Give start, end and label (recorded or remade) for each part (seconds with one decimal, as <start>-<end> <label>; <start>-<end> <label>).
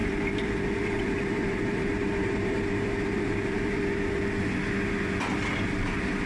0.0-3.8 remade; 3.8-6.3 recorded